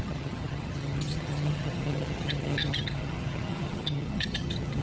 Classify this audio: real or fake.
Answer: fake